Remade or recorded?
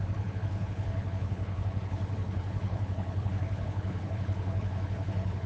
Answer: remade